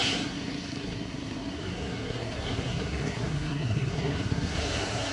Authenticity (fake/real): fake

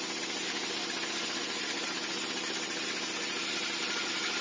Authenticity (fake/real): real